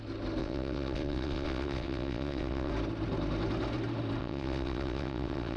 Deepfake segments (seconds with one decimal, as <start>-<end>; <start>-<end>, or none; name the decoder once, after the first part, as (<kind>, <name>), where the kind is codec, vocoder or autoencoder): 0.4-2.7 (vocoder, WaveNeXt); 4.2-5.6